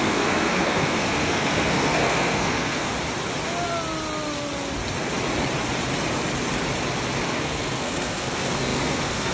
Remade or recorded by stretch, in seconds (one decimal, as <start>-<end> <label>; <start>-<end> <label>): 0.0-2.9 remade; 2.9-7.4 recorded; 7.4-9.3 remade